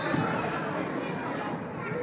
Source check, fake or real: real